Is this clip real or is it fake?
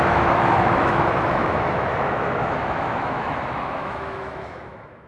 fake